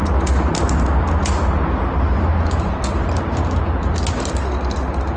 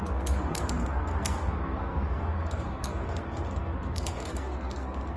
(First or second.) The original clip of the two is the first